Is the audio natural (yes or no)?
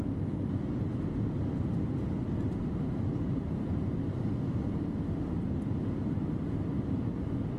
yes